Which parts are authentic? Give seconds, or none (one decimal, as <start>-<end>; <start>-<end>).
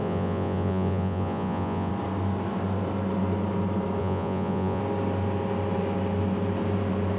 1.9-4.0; 4.8-7.2